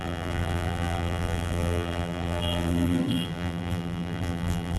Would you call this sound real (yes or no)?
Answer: no